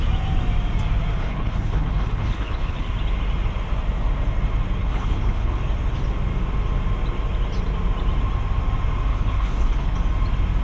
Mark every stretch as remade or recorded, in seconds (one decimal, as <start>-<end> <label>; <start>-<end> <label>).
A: 0.0-1.2 recorded; 1.2-2.9 remade; 2.9-4.8 recorded; 4.8-5.6 remade; 5.6-9.1 recorded; 9.1-10.0 remade; 10.0-10.6 recorded